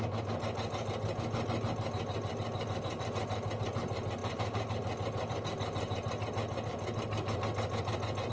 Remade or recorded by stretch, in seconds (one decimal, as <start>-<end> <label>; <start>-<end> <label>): 0.0-8.3 recorded